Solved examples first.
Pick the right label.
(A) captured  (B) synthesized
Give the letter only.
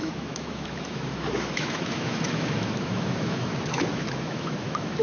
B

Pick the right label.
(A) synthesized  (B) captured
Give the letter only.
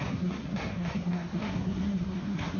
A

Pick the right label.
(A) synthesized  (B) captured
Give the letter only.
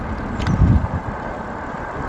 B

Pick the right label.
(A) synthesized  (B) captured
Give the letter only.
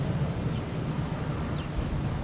B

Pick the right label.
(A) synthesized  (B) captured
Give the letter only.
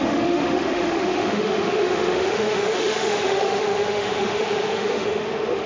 A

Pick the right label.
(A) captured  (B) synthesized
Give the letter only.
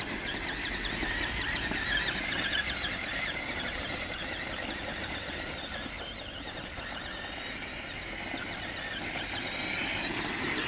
A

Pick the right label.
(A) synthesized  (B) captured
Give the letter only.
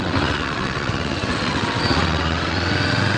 A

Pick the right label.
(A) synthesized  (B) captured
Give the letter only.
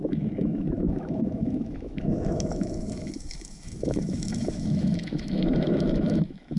A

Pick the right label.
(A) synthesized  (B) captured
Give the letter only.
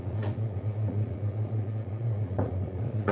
A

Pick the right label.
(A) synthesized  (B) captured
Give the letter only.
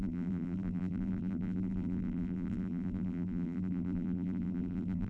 A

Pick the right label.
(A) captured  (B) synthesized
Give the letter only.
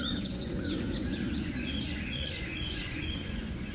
B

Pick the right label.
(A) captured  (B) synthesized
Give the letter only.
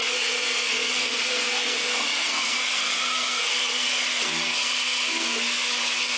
B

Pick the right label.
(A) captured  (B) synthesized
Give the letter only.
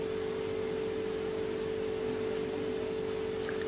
A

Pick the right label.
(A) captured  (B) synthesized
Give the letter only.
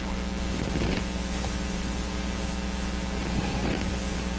A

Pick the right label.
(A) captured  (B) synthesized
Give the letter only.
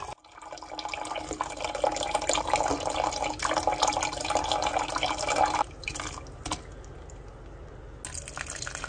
A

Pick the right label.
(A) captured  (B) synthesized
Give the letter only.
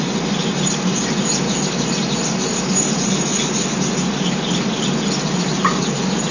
A